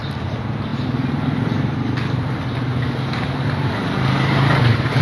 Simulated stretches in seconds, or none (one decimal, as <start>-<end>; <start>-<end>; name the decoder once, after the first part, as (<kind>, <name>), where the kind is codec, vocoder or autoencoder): none